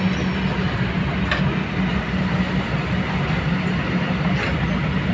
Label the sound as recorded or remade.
recorded